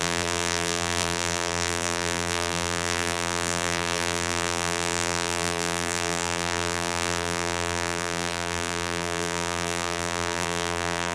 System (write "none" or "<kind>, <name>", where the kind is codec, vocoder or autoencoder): vocoder, BigVGAN v2